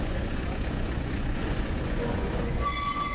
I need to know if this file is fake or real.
fake